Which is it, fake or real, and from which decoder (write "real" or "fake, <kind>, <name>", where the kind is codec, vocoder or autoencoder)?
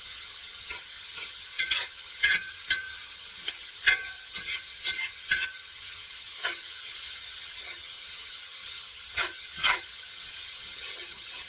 fake, vocoder, HiFi-GAN